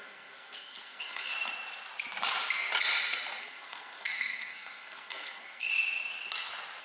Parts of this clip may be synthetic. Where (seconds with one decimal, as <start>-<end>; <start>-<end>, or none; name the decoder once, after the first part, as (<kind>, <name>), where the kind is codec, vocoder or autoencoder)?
0.0-1.3 (codec, SNAC); 3.4-5.7